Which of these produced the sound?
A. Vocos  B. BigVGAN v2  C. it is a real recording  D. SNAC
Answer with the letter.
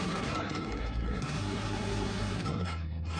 D